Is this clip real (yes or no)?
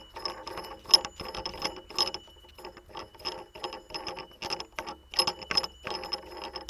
yes